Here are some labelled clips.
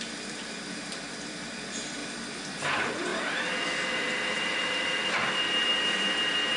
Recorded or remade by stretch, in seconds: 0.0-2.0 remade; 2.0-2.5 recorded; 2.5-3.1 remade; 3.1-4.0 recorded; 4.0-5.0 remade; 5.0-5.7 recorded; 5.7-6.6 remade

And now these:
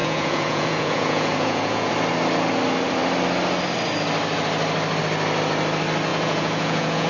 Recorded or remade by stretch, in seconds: 0.0-1.9 remade; 1.9-6.1 recorded; 6.1-7.1 remade